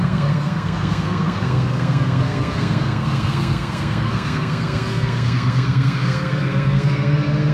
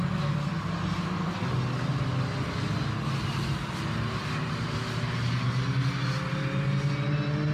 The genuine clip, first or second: second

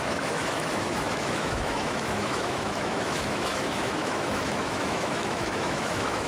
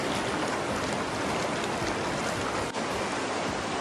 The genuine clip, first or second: second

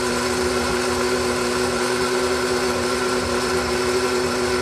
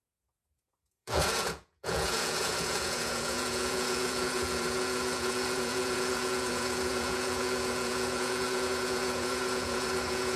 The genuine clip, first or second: first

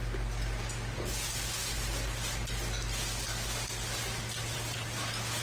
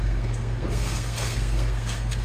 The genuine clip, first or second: first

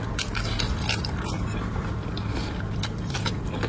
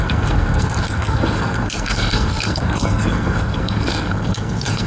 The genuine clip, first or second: first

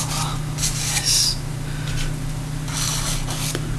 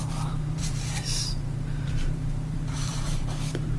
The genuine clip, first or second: first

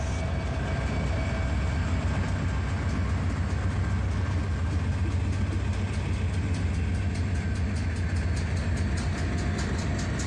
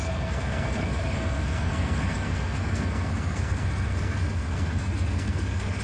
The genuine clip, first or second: first